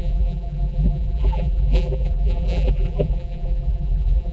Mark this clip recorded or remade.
remade